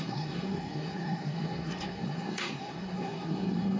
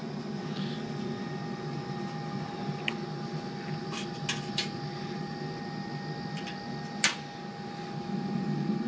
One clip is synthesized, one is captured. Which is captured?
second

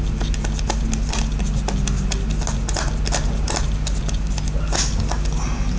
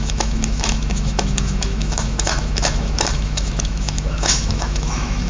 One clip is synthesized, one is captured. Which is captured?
first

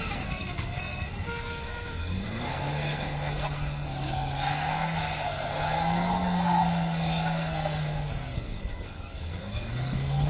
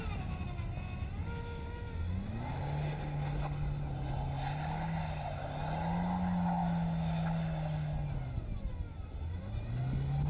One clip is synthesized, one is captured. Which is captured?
second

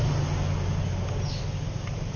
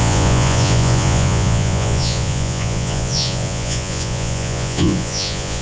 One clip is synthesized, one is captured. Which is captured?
first